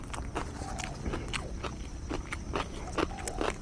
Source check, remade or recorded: recorded